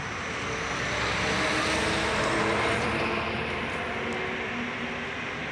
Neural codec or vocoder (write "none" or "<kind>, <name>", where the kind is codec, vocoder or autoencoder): none